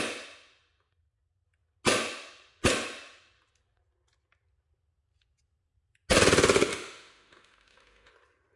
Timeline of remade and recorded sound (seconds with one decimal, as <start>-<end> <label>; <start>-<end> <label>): 0.0-6.7 recorded; 6.7-8.1 remade; 8.1-8.6 recorded